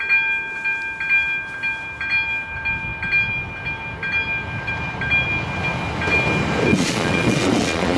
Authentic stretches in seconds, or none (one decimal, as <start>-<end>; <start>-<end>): 0.0-6.7